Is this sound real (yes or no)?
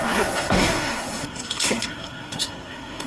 no